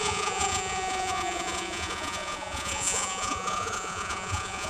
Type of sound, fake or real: fake